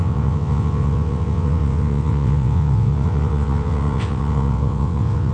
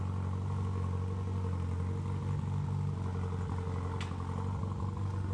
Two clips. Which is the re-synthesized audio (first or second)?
first